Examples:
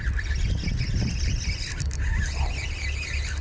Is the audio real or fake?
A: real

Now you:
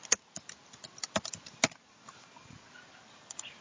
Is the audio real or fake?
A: real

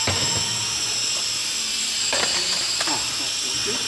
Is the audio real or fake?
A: real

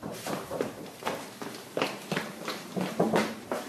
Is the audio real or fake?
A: fake